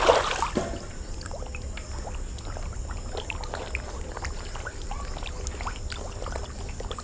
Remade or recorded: recorded